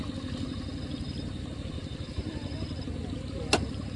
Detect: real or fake real